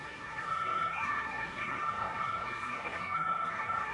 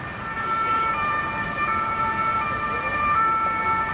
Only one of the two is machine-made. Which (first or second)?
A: first